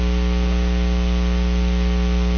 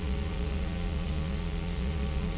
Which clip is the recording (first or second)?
first